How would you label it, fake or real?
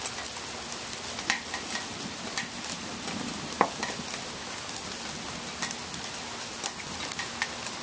real